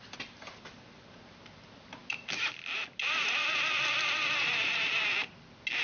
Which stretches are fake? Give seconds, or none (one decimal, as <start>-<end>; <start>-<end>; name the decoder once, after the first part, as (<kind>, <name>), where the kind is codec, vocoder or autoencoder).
none